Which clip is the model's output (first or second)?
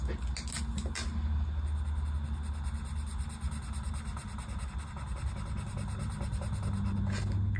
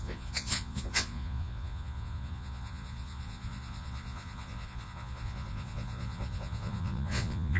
second